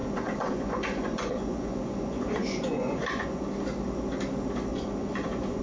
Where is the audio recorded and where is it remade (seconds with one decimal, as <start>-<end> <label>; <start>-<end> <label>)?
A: 0.0-3.4 remade; 3.4-4.7 recorded; 4.7-5.6 remade